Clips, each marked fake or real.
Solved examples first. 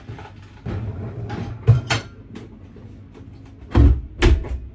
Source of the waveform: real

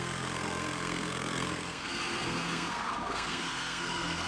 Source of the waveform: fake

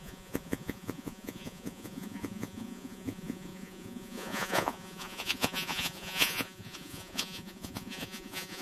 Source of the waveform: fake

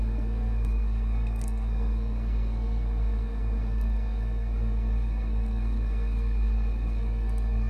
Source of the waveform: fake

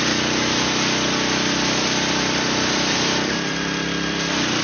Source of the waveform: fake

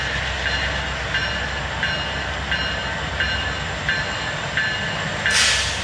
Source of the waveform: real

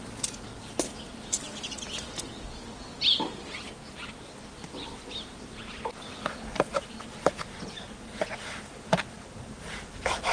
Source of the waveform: real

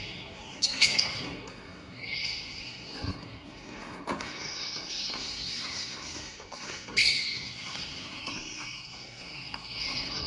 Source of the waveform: fake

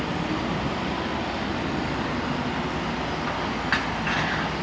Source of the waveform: real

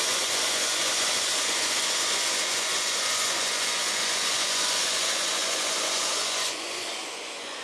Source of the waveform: fake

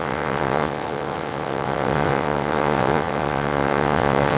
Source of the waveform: fake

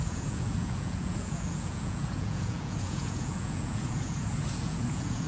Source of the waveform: fake